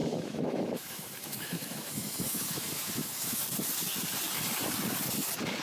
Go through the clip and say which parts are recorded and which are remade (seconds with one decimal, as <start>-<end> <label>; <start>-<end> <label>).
0.0-3.4 remade; 3.4-5.6 recorded